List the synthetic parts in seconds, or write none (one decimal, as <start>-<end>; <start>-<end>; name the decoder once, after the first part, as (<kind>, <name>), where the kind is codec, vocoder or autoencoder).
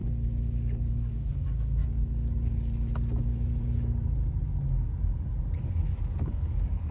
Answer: 0.9-1.8 (codec, DAC); 5.9-6.9